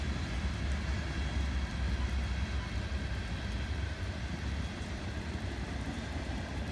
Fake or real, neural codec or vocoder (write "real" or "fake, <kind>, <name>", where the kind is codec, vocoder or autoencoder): real